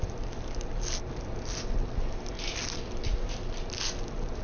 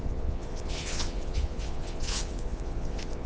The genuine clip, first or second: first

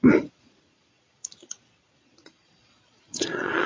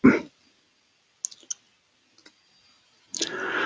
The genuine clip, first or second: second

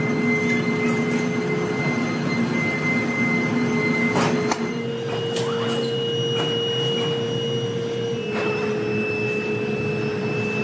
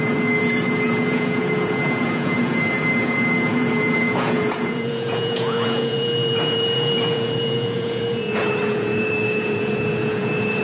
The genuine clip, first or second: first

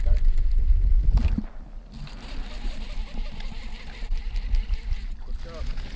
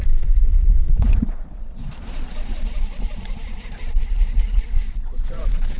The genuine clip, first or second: first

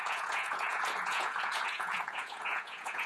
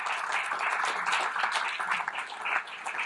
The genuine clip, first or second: second